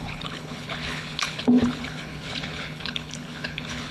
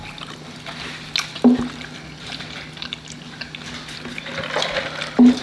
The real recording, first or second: second